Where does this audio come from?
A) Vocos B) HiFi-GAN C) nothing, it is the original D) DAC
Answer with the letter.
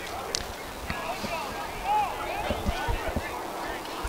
C